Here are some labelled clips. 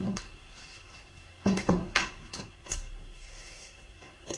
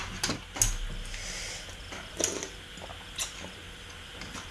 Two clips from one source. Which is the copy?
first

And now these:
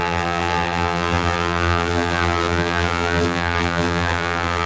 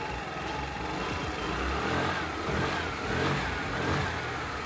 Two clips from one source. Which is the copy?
first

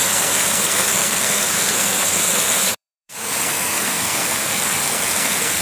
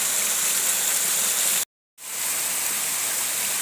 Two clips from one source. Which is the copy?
first